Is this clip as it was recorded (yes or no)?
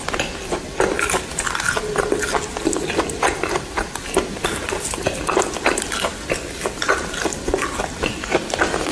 yes